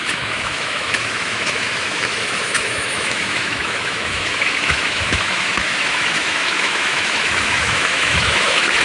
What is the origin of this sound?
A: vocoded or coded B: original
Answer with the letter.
A